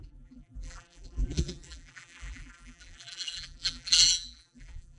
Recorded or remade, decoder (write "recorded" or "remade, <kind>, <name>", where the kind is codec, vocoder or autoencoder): remade, vocoder, BigVGAN v2